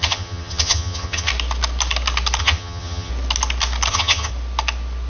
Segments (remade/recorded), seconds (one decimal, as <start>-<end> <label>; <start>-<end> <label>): 0.0-1.3 remade; 1.3-2.4 recorded; 2.4-3.1 remade; 3.1-3.9 recorded; 3.9-4.3 remade; 4.3-5.1 recorded